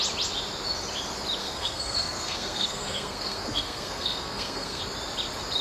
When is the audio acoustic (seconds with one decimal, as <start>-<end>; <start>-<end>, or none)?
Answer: 0.0-1.4; 4.8-5.6